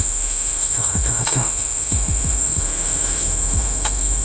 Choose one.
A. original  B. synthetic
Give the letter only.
B